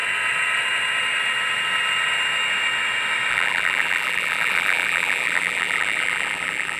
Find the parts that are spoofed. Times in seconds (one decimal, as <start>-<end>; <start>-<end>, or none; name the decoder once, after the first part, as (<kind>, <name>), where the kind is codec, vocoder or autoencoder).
3.3-6.8 (vocoder, BigVGAN v2)